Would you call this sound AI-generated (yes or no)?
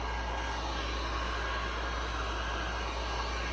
no